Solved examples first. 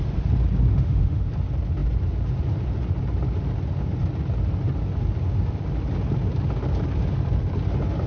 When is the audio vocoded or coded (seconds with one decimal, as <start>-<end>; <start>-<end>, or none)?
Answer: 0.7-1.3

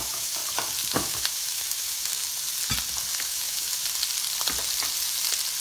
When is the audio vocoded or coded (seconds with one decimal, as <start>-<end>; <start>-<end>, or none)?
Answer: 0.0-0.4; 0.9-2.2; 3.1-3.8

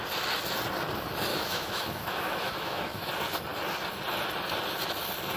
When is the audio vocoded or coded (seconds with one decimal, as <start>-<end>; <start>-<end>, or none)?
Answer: 1.3-3.1

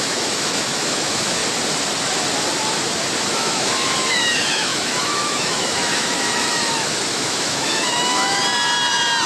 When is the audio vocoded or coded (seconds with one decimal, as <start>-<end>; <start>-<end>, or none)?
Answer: 0.0-1.4; 3.3-8.4